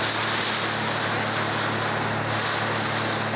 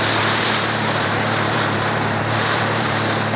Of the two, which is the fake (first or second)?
second